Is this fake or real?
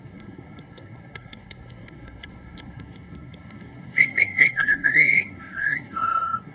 fake